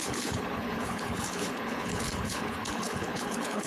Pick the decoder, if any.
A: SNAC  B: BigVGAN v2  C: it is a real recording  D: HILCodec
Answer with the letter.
D